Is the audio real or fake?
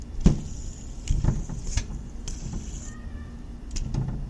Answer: real